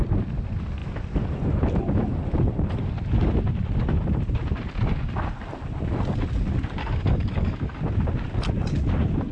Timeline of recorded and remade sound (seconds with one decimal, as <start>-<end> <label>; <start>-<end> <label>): 0.0-6.8 recorded; 6.8-7.8 remade; 7.8-9.3 recorded